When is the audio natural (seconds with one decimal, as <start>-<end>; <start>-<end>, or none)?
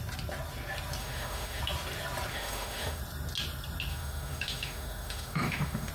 0.0-1.0; 1.6-2.3; 3.0-3.9